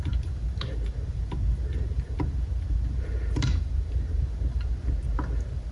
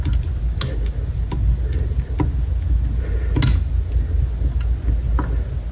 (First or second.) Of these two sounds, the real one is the second